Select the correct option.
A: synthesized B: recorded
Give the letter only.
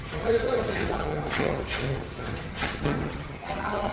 A